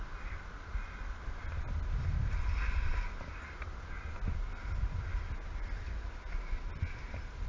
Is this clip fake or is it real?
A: real